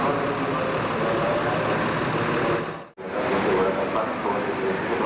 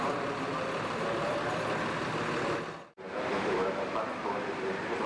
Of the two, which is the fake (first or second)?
second